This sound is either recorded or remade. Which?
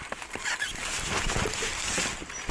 recorded